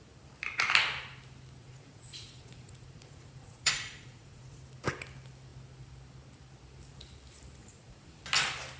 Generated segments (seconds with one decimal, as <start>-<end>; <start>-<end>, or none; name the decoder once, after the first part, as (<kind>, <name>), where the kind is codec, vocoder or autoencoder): 1.6-4.6 (vocoder, Vocos); 7.6-8.2